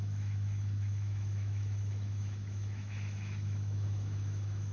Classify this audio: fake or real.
fake